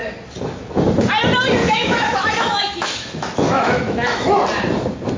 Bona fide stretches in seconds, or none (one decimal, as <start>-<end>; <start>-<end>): 0.0-1.6; 4.4-5.2